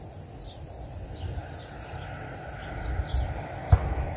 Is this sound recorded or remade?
recorded